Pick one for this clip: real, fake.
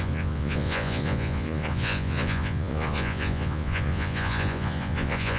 fake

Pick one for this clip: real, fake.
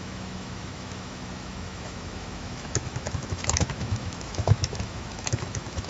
fake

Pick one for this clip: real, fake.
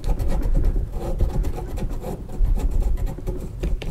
fake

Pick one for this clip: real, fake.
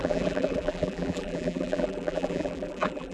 fake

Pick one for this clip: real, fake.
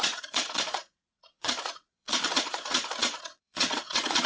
fake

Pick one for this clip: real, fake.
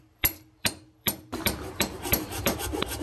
fake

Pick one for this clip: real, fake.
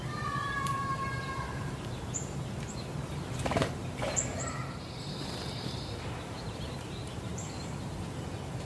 fake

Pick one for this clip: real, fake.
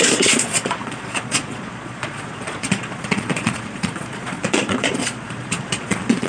fake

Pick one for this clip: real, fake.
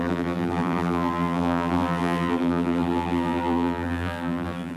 fake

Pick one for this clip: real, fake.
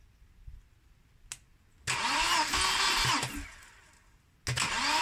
real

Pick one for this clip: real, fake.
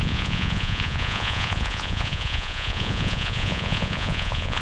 fake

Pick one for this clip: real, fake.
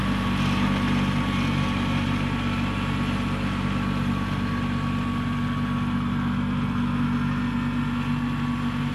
real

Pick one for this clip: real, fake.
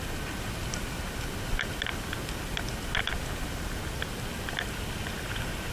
real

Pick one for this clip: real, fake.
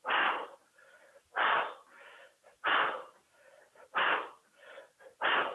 real